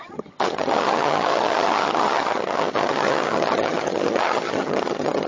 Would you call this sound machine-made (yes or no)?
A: yes